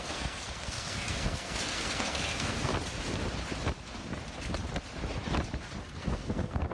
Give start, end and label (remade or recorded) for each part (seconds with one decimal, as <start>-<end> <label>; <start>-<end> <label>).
0.0-2.7 remade; 2.7-5.8 recorded; 5.8-6.7 remade